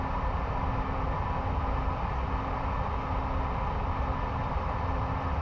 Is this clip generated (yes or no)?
no